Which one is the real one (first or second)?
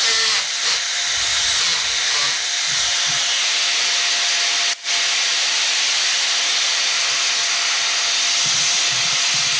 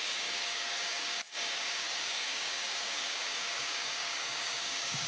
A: first